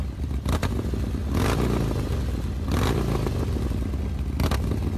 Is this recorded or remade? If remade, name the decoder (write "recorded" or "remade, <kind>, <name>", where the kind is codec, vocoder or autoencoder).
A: recorded